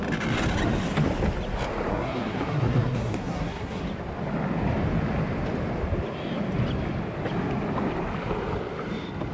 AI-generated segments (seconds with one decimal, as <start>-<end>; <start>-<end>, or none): 1.9-3.8